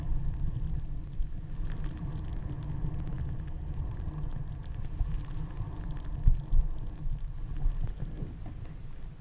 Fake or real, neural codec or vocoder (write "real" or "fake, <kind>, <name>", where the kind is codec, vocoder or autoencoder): real